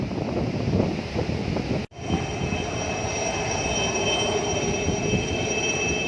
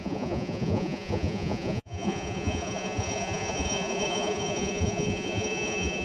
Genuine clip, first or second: first